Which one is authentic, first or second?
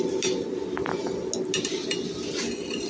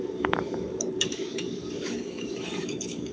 first